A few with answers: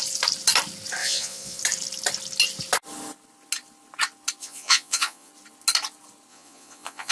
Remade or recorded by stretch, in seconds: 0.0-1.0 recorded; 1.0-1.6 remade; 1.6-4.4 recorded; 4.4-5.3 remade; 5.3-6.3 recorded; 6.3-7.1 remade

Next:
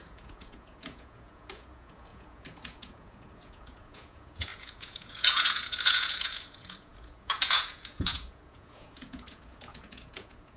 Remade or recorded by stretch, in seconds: 0.0-10.6 remade